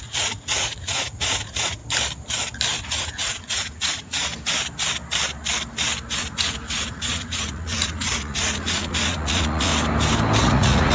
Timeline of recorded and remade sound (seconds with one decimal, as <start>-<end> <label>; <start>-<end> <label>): 0.0-1.8 remade; 1.8-2.8 recorded; 2.8-4.3 remade; 4.3-6.2 recorded; 6.2-9.7 remade; 9.7-10.4 recorded; 10.4-10.9 remade